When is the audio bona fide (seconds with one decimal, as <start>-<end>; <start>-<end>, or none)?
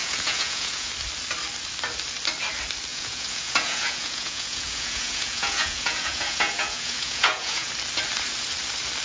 0.9-2.9; 7.7-9.0